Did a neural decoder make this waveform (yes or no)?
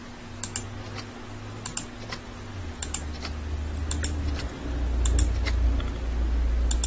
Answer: no